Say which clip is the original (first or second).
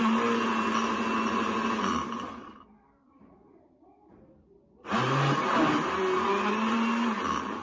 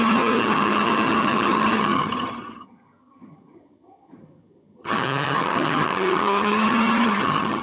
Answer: first